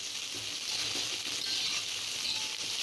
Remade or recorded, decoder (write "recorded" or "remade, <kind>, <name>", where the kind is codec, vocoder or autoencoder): recorded